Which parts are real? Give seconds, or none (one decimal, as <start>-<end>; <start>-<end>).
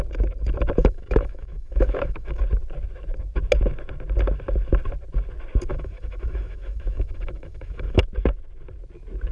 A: 0.0-0.8; 2.4-5.7; 8.0-9.3